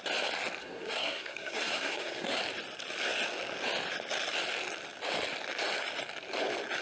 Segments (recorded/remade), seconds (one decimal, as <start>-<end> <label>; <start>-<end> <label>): 0.0-0.6 recorded; 0.6-2.4 remade; 2.4-6.8 recorded